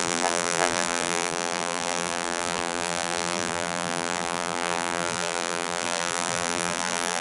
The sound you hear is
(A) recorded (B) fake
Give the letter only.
B